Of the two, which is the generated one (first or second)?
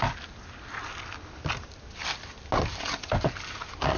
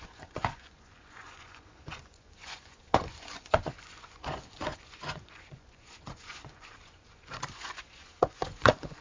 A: second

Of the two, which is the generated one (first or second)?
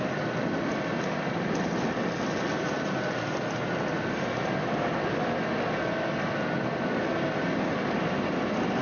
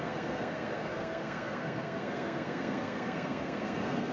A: second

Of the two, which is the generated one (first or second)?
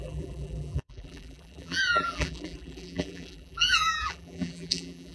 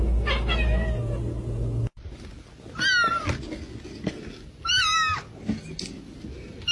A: first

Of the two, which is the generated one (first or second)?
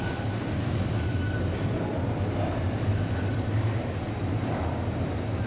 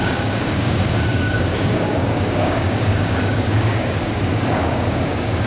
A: second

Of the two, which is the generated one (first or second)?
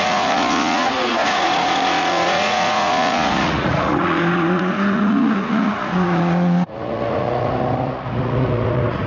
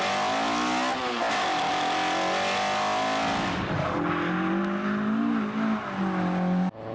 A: first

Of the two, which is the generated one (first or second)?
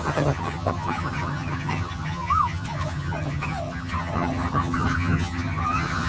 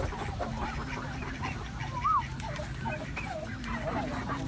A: first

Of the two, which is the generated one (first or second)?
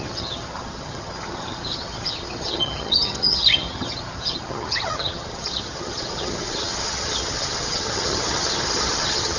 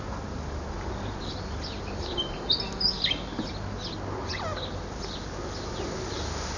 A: first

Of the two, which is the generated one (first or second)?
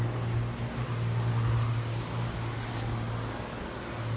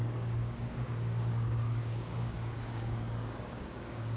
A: second